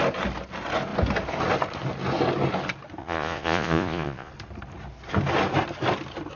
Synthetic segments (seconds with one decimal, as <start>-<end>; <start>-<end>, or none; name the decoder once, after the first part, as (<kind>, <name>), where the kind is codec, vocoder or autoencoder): 3.0-4.3 (vocoder, Vocos)